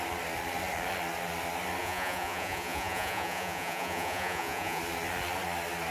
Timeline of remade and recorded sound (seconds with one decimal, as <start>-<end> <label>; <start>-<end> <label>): 0.0-1.8 recorded; 1.8-4.8 remade; 4.8-5.9 recorded